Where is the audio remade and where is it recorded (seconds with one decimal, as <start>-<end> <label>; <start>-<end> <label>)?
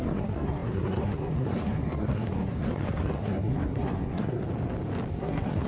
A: 0.0-4.4 remade; 4.4-5.2 recorded; 5.2-5.7 remade